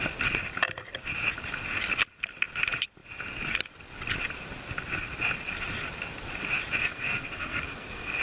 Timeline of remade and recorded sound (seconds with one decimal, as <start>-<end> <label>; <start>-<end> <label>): 0.0-6.8 recorded; 6.8-8.2 remade